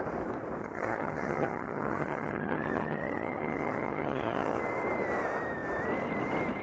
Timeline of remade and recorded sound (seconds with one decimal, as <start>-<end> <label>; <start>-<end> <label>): 0.0-0.6 recorded; 0.6-4.6 remade; 4.6-6.6 recorded